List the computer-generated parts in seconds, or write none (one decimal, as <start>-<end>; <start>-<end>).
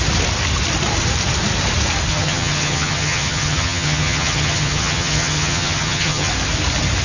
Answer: 2.1-6.3